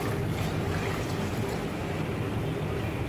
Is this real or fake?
real